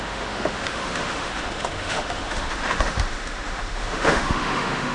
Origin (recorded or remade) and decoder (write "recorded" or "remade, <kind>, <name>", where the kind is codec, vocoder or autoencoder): remade, autoencoder, DAC-VAE